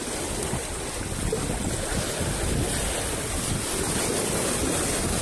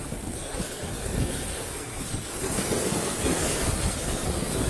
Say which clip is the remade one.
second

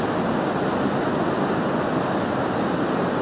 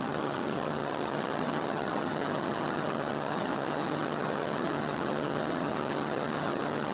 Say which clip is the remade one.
second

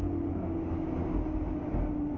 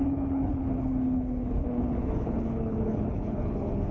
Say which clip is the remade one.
second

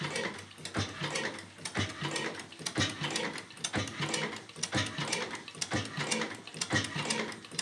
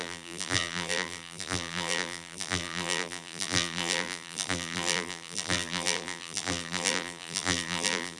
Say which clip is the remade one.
second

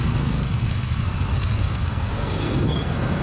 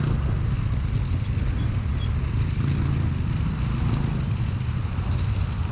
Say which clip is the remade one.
first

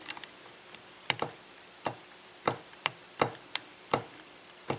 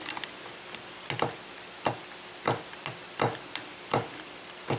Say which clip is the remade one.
first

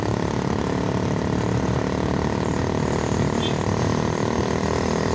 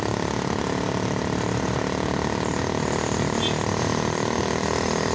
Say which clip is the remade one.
first